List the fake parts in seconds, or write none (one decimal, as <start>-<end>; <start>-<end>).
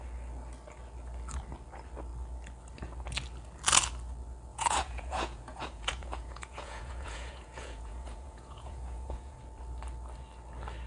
4.5-9.4